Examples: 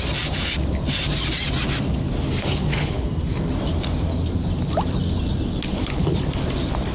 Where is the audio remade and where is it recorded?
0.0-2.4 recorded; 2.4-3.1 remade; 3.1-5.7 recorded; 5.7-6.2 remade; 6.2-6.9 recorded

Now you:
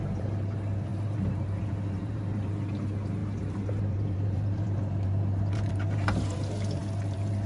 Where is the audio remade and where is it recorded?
0.0-7.5 remade